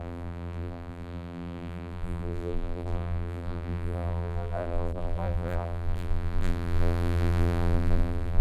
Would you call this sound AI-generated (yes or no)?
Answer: yes